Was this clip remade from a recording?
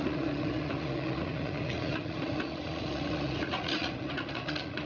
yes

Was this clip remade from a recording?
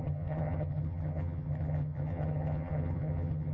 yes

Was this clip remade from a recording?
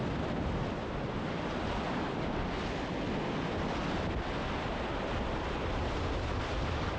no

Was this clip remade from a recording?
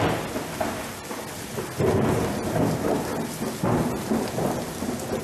no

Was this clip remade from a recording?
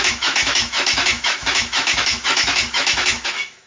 yes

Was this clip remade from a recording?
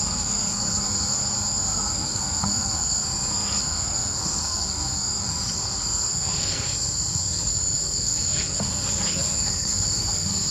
yes